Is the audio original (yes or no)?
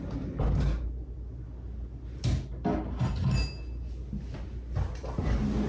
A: yes